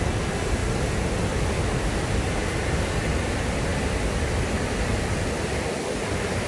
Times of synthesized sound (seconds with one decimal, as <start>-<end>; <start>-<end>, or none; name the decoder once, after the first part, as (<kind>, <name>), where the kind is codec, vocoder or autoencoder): none

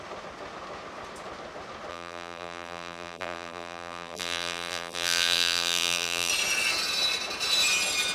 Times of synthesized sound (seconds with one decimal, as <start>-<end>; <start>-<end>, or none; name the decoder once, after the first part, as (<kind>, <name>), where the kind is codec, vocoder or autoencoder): 1.9-6.3 (vocoder, BigVGAN v2)

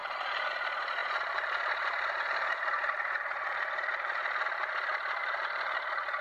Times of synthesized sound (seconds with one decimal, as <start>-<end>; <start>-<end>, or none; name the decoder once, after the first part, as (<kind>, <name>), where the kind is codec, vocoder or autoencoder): 0.0-0.5 (vocoder, BigVGAN v2); 1.0-4.7; 5.2-6.2

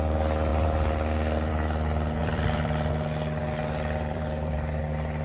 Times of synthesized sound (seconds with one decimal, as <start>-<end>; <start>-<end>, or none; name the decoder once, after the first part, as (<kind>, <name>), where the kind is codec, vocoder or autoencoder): 2.2-2.9 (vocoder, BigVGAN v2); 3.4-4.8

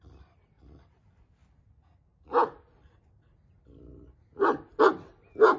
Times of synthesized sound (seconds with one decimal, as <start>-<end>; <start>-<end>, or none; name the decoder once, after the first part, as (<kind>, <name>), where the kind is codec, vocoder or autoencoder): none